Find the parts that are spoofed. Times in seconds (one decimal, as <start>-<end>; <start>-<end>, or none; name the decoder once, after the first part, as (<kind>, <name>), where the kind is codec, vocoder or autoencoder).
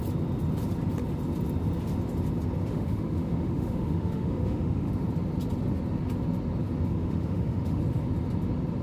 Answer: 2.7-4.9 (autoencoder, DAC-VAE); 6.9-7.8